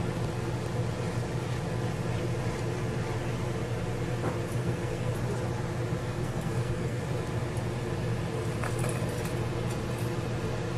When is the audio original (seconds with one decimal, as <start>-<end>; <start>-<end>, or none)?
0.0-4.6; 5.1-6.0; 7.0-10.8